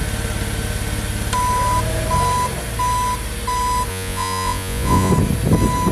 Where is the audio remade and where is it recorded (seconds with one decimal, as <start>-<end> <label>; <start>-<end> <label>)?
0.0-3.9 recorded; 3.9-5.1 remade; 5.1-5.9 recorded